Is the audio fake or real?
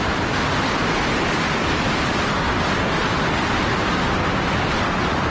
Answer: real